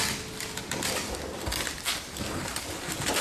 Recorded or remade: recorded